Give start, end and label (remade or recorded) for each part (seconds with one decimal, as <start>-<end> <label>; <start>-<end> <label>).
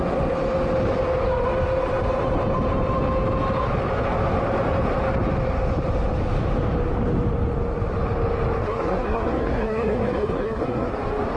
0.0-8.6 recorded; 8.6-10.9 remade; 10.9-11.4 recorded